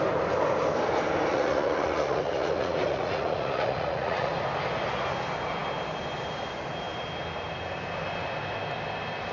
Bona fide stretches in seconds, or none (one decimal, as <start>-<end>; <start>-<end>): 0.0-1.3; 4.3-9.3